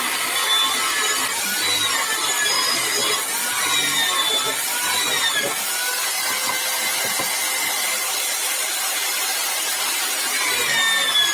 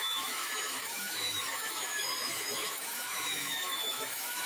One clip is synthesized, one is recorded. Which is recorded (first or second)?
first